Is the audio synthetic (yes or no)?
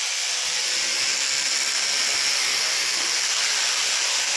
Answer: no